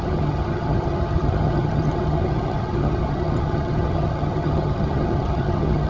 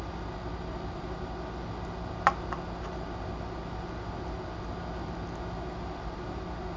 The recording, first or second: second